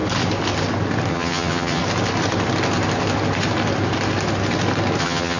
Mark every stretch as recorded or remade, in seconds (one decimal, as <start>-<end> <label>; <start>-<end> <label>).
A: 0.0-1.1 recorded; 1.1-1.8 remade; 1.8-5.0 recorded; 5.0-5.4 remade